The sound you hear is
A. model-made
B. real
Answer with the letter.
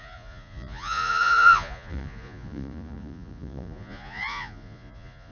A